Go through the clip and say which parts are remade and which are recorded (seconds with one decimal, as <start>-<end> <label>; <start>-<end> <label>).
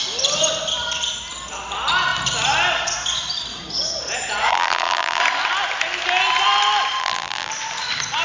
0.0-4.5 recorded; 4.5-5.2 remade; 5.2-7.0 recorded; 7.0-7.5 remade; 7.5-8.2 recorded